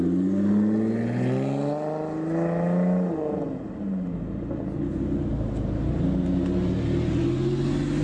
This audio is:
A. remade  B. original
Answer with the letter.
B